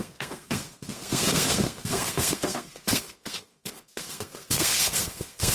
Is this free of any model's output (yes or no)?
no